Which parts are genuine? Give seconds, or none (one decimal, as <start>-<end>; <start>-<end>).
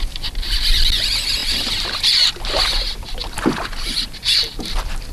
0.0-5.1